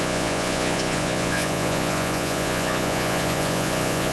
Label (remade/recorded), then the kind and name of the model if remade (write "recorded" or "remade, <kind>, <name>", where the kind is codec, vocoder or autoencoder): remade, vocoder, Vocos